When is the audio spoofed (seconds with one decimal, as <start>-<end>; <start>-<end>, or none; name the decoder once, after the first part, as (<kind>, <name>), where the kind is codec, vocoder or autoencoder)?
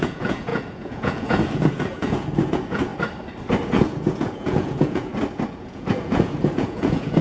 0.0-2.9 (vocoder, Vocos); 3.7-5.1; 5.6-7.2